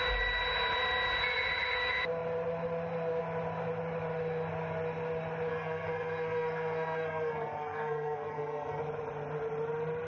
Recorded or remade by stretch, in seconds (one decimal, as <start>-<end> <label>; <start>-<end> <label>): 0.0-5.5 recorded; 5.5-8.8 remade; 8.8-10.1 recorded